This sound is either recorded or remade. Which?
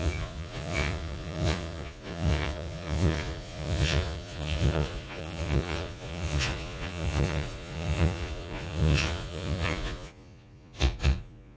remade